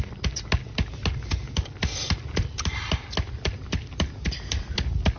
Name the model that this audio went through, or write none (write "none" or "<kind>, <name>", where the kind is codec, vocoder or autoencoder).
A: none